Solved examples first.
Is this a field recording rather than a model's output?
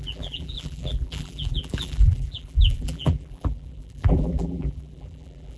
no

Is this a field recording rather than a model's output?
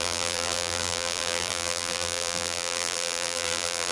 no